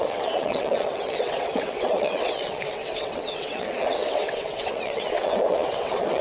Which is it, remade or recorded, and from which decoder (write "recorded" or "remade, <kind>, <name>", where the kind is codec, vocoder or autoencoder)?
remade, vocoder, WaveNeXt